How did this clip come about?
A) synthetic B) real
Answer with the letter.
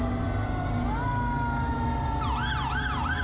B